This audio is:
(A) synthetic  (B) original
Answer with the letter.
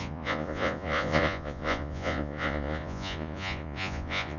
A